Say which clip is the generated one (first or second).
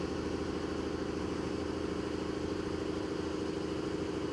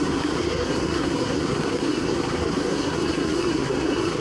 second